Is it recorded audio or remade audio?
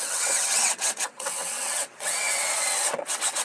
remade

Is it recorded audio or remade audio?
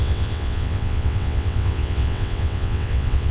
remade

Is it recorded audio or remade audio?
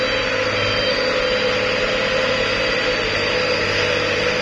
recorded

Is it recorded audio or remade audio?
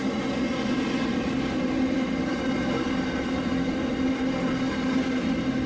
recorded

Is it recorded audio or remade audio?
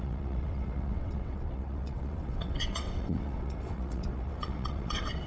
remade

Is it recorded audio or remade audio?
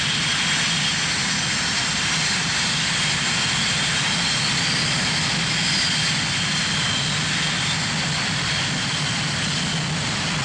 recorded